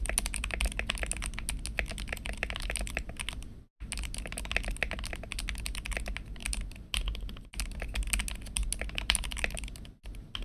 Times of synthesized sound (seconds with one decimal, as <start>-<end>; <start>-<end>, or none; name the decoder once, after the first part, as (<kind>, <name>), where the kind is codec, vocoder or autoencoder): none